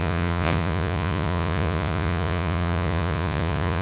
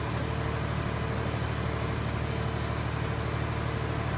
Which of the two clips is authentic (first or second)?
second